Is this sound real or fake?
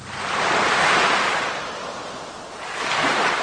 real